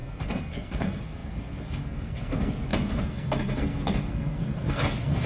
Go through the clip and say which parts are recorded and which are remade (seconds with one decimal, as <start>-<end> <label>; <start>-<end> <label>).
0.0-5.3 remade